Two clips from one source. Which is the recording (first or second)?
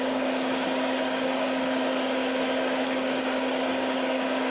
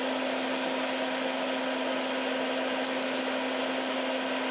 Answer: second